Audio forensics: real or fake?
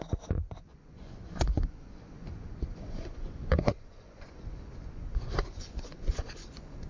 fake